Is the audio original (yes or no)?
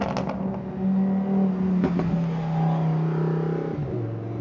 yes